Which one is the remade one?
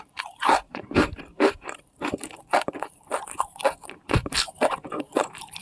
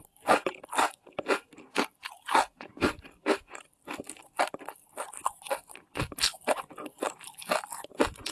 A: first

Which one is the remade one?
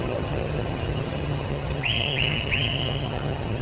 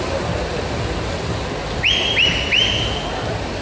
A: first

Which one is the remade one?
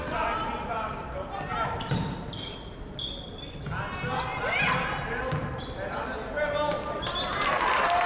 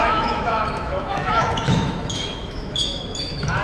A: second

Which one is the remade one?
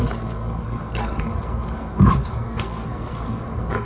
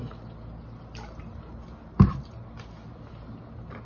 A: first